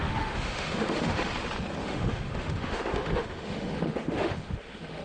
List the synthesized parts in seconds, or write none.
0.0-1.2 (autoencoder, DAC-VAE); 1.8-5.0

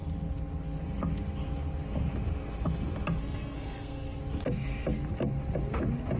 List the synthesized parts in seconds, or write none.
3.2-4.2 (codec, SNAC)

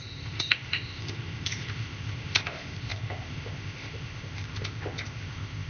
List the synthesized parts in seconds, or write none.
0.0-5.7 (codec, ZipCodec)

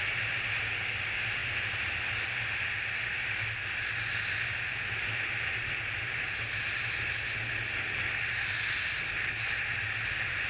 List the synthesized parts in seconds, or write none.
none

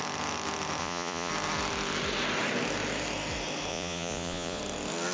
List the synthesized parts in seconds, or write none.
0.8-1.3 (vocoder, Vocos); 3.7-4.6

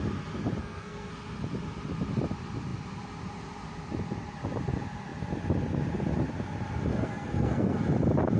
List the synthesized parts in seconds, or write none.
0.6-1.1 (codec, SNAC); 6.9-7.8

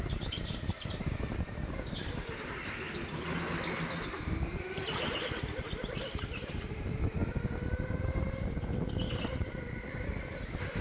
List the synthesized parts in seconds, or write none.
none